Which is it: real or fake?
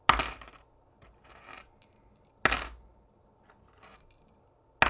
real